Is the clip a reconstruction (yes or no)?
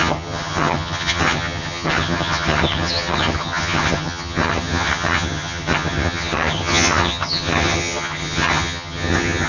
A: yes